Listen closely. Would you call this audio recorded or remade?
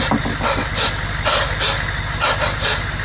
recorded